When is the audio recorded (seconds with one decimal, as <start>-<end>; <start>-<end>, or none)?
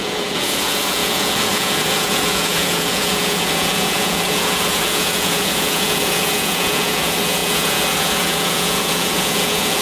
none